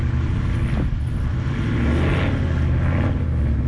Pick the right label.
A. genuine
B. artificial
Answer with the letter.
A